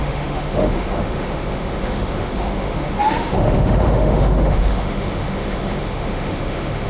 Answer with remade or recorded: remade